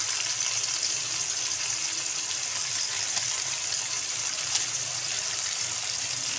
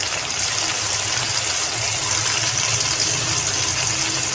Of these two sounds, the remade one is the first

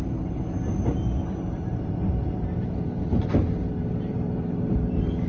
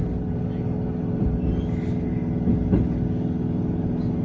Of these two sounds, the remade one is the first